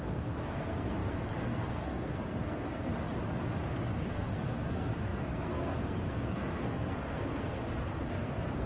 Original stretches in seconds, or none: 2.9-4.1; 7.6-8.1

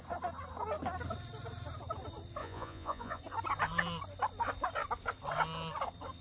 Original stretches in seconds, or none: 0.0-2.4; 3.2-6.2

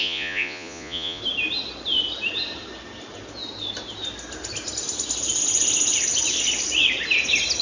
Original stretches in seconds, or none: 1.2-7.6